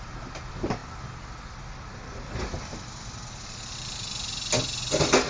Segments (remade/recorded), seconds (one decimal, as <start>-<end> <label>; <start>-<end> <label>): 0.0-5.3 recorded